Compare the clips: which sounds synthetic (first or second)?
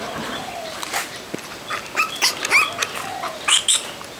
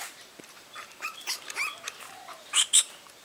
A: second